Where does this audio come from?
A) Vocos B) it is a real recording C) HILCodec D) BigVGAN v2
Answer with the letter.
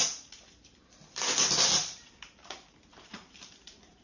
D